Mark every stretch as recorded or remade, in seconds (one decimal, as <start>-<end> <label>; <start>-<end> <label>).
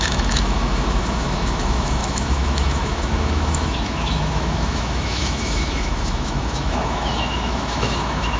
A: 0.0-8.4 remade